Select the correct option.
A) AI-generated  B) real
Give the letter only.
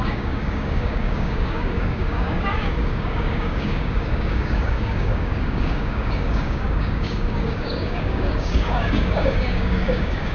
A